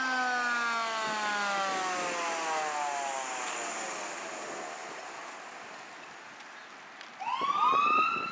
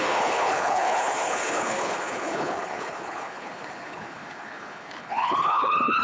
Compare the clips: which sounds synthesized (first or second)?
second